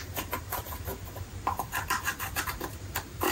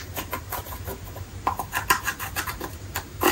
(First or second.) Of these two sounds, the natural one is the second